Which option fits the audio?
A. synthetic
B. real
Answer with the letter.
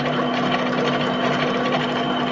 B